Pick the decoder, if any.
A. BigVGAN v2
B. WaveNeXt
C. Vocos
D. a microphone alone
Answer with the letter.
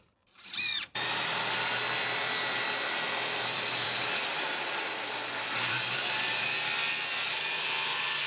A